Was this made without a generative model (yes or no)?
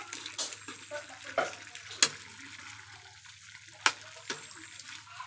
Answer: yes